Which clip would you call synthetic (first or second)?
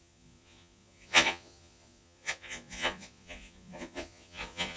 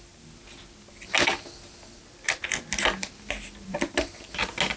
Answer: first